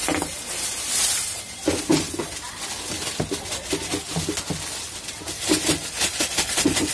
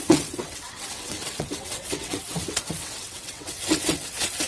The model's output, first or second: second